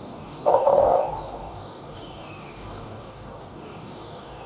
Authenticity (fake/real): fake